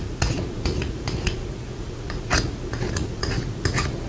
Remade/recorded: remade